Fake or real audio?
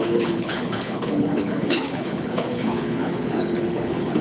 fake